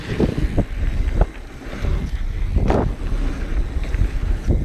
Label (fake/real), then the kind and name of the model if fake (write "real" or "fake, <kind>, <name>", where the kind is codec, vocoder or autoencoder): real